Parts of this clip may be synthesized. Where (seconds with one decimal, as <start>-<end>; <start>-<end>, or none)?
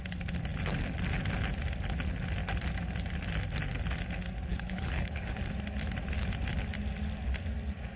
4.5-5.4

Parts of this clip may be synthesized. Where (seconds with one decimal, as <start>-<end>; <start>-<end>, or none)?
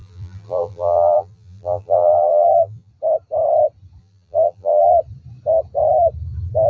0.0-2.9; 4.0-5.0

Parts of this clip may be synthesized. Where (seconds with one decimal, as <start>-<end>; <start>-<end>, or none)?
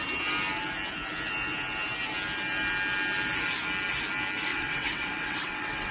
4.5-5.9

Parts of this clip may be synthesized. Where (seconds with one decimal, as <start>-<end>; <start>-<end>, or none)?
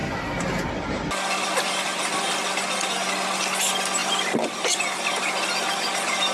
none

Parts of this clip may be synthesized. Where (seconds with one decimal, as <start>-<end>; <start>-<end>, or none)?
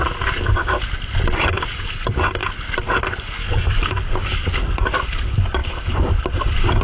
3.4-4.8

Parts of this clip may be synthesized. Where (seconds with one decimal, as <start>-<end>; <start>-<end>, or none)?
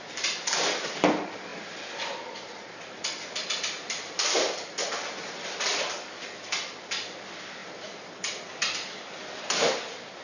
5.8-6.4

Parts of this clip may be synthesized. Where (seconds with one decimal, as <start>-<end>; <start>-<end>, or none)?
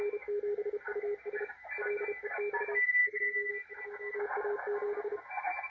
3.0-3.5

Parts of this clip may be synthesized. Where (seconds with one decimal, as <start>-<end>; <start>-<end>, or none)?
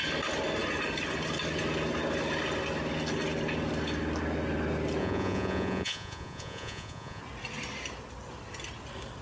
5.0-7.2